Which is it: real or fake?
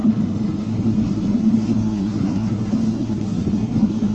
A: fake